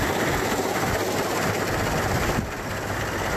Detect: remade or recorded recorded